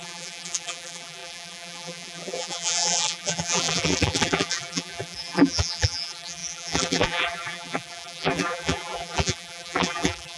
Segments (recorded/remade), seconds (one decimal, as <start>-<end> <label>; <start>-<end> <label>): 0.0-10.4 remade

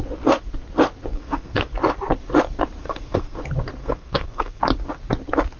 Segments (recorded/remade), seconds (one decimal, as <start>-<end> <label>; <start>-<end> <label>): 0.0-1.1 recorded; 1.1-1.7 remade; 1.7-2.8 recorded; 2.8-3.4 remade; 3.4-3.8 recorded; 3.8-4.6 remade; 4.6-5.6 recorded

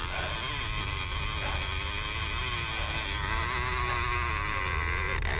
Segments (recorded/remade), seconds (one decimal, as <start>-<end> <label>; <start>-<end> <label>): 0.0-5.4 recorded

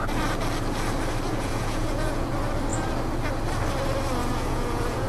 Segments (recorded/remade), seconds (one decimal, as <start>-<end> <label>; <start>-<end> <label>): 0.0-1.3 recorded; 1.3-2.3 remade; 2.3-4.2 recorded; 4.2-5.1 remade

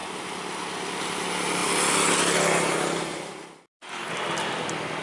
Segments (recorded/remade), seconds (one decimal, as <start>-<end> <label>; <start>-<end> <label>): 0.0-5.0 recorded

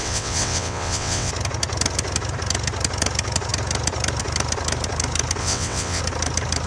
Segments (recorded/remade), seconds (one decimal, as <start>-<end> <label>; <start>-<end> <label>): 0.0-1.3 remade; 1.3-5.4 recorded; 5.4-6.0 remade; 6.0-6.7 recorded

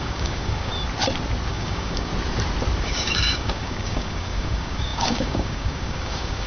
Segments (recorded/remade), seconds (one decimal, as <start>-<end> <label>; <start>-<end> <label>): 0.0-0.7 remade; 0.7-1.5 recorded; 1.5-2.1 remade; 2.1-2.8 recorded; 2.8-6.5 remade